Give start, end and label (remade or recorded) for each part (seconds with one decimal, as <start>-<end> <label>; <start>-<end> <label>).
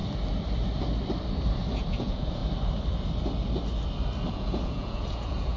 0.0-1.7 recorded; 1.7-2.4 remade; 2.4-4.3 recorded; 4.3-5.6 remade